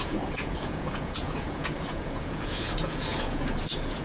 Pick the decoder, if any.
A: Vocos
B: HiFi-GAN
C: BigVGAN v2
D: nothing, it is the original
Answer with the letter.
A